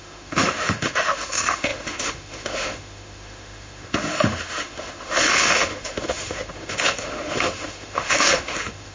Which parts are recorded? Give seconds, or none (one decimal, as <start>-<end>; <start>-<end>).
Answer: none